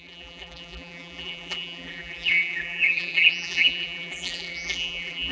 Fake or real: fake